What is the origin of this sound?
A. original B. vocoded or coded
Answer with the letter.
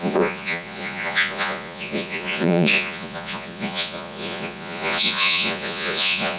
B